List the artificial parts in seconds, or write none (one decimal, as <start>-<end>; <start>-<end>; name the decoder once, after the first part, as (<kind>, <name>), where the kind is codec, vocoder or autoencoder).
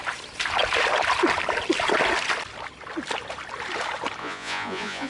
4.2-5.1 (vocoder, Vocos)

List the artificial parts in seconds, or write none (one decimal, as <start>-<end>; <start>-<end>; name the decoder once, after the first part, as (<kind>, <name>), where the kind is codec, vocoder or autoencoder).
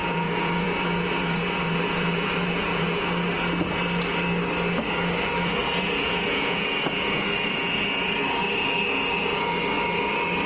0.0-3.1 (vocoder, Vocos); 5.6-8.4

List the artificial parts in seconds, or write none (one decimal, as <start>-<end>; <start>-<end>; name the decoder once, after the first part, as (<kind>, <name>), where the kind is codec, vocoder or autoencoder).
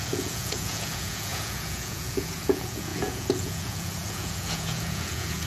0.0-5.5 (vocoder, Vocos)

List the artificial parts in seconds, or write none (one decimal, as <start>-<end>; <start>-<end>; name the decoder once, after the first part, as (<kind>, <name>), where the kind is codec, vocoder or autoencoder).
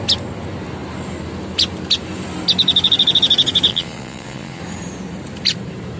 3.7-4.6 (vocoder, Vocos)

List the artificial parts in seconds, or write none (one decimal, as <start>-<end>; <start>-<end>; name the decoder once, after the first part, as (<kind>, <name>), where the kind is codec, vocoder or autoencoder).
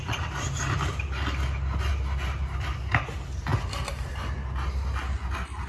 none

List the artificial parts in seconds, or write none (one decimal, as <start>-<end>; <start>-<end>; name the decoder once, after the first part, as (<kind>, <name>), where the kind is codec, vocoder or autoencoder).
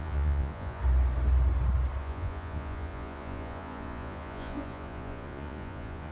0.0-0.8 (vocoder, Vocos); 2.0-6.1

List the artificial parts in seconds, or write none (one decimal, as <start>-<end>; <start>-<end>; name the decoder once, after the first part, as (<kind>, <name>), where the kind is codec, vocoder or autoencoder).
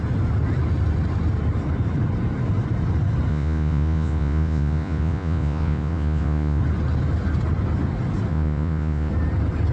3.3-6.6 (vocoder, Vocos); 8.3-9.1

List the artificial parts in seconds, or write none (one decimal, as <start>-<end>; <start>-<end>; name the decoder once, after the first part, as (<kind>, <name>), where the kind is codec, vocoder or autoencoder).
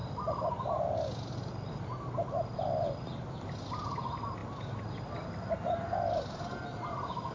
none